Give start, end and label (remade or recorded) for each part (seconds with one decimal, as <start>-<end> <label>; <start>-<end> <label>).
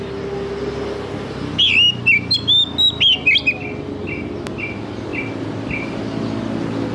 0.0-6.9 recorded